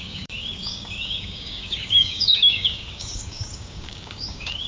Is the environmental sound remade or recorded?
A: remade